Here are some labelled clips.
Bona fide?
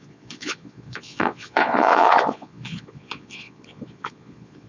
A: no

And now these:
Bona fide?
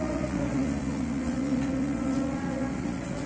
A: no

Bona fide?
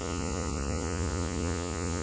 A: no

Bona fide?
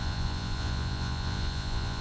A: no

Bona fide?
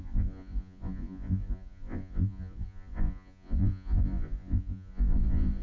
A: no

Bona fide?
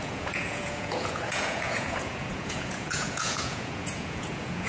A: no